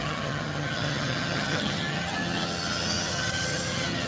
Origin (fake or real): fake